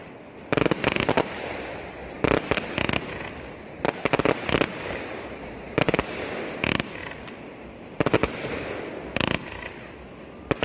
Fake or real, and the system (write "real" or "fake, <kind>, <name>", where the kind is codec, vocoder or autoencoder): real